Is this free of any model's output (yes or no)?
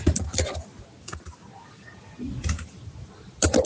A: yes